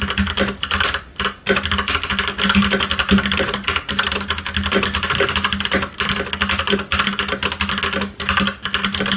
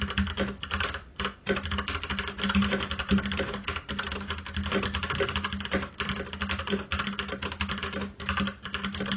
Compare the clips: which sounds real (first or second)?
second